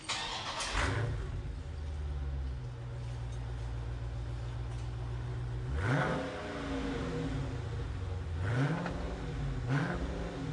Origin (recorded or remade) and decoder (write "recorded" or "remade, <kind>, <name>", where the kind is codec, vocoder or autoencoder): recorded